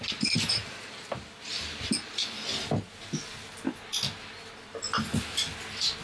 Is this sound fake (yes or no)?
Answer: no